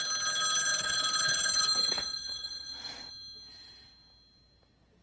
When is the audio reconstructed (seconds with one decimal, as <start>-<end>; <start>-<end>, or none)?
0.7-3.1